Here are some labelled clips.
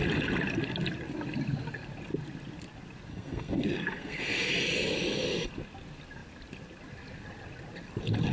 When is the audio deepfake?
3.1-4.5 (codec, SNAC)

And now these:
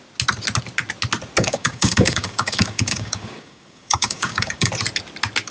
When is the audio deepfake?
1.4-4.7 (codec, DAC)

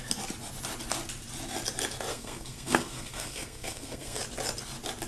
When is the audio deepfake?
2.1-4.2 (codec, SNAC)

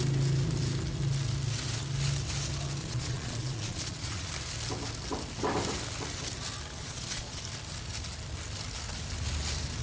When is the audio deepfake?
2.8-4.3 (vocoder, Vocos); 6.8-7.4